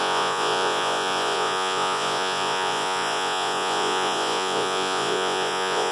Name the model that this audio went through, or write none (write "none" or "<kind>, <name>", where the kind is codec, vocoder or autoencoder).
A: vocoder, Vocos